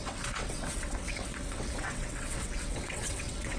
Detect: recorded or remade remade